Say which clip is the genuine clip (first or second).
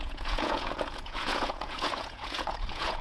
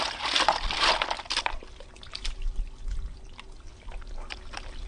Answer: second